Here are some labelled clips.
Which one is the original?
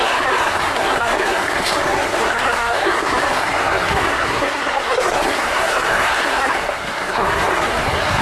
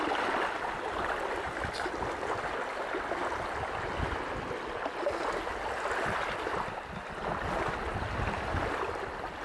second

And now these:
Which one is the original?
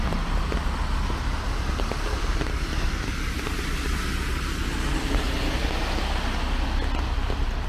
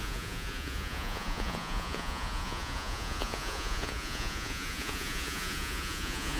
first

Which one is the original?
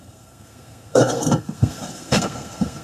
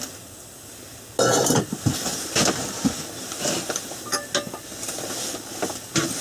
second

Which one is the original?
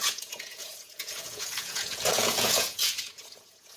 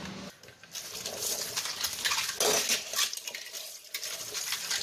second